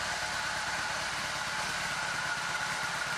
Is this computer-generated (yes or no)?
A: no